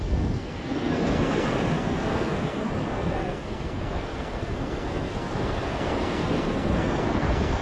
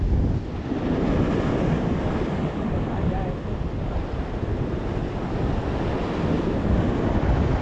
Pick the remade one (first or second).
first